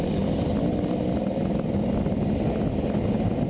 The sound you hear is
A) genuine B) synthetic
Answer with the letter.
A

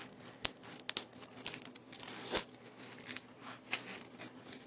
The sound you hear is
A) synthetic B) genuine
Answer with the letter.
B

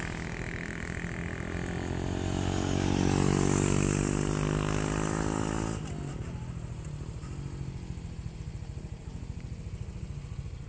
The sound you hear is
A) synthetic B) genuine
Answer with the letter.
B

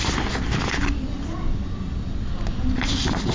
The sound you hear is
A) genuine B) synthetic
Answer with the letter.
A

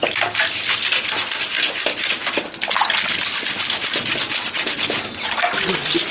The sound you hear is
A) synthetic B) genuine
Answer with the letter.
B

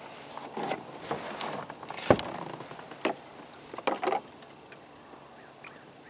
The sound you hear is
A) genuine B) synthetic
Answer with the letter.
A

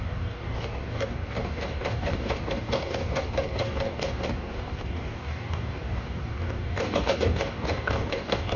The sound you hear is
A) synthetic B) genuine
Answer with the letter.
A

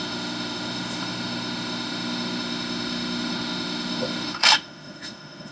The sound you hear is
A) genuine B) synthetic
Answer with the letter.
B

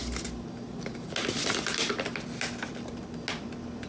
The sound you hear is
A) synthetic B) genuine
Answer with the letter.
B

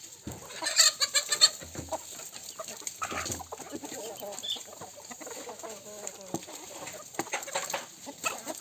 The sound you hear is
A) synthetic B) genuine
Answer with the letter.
B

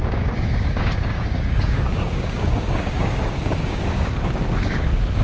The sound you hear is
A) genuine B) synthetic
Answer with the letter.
B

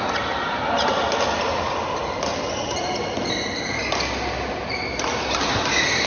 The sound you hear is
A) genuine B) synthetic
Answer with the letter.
A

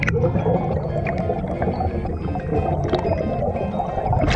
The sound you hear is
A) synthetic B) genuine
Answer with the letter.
B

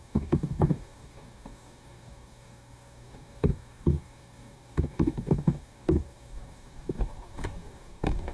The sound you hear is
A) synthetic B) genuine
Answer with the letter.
A